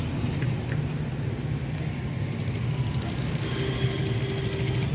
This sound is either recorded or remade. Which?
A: recorded